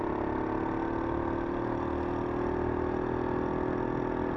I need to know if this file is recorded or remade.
recorded